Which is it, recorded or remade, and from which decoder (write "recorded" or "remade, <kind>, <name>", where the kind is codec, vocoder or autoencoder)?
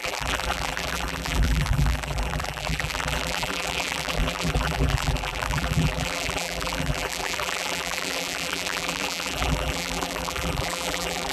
remade, vocoder, BigVGAN v2